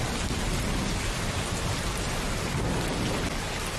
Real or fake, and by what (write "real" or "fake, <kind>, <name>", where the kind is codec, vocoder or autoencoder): real